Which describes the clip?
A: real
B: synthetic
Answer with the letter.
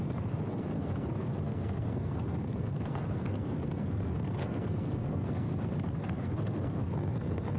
B